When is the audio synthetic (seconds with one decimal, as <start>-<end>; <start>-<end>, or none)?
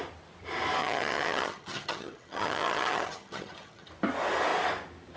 0.8-3.9